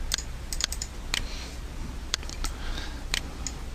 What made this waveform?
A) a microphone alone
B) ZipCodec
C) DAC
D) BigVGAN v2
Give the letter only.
A